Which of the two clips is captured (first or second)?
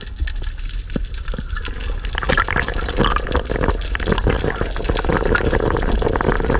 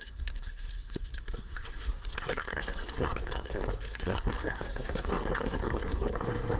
first